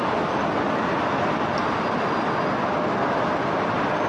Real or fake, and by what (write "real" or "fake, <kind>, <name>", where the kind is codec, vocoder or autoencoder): real